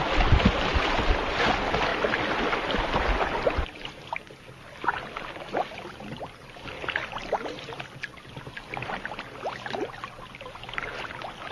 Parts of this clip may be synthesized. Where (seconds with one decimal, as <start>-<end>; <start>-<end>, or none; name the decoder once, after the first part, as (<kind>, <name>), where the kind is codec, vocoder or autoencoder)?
none

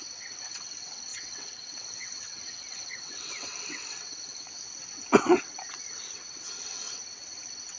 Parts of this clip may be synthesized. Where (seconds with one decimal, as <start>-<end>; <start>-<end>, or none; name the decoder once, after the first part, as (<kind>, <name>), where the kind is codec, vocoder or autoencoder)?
0.0-7.8 (vocoder, WaveNeXt)

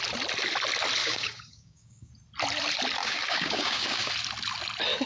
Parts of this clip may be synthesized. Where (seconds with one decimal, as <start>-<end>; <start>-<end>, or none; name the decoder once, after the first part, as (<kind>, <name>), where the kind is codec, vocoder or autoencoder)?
1.0-2.1 (codec, DAC); 3.0-4.1

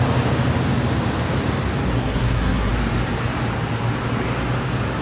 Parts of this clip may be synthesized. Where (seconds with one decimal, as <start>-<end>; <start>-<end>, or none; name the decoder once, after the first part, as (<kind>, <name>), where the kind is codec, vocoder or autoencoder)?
1.9-2.7 (codec, SNAC)